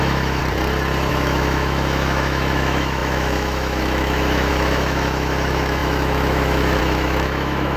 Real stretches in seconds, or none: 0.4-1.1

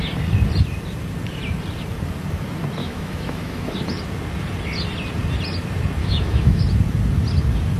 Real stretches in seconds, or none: 0.0-2.8; 3.8-6.0; 6.6-7.8